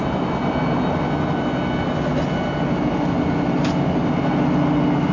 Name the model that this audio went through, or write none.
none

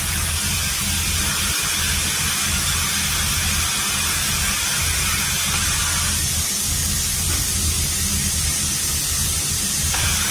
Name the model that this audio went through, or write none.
none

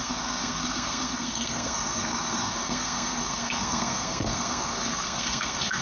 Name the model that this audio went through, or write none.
codec, SNAC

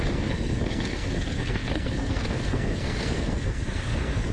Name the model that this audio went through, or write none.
codec, SNAC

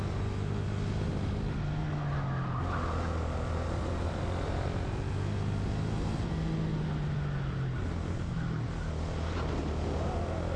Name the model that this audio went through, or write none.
none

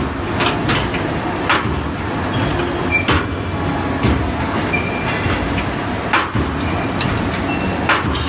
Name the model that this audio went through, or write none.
none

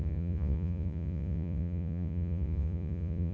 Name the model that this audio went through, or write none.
vocoder, Vocos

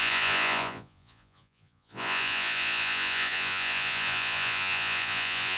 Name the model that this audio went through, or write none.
vocoder, Vocos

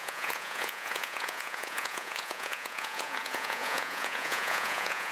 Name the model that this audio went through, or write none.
vocoder, Vocos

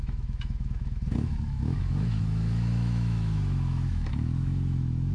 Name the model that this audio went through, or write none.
autoencoder, DAC-VAE